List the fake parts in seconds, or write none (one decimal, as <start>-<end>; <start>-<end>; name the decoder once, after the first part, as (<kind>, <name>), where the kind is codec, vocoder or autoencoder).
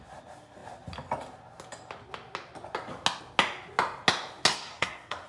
4.5-5.3 (codec, SNAC)